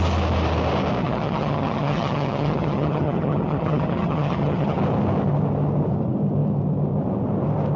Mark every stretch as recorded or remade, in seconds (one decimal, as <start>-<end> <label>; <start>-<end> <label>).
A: 0.0-1.0 recorded; 1.0-4.8 remade; 4.8-7.8 recorded